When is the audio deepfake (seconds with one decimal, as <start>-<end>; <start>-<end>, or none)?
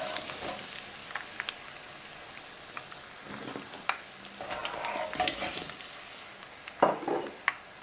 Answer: none